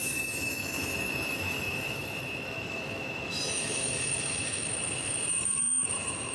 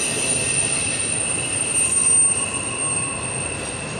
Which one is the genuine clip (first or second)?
second